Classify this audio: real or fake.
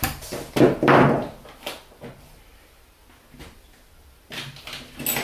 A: real